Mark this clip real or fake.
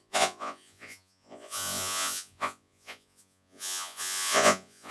fake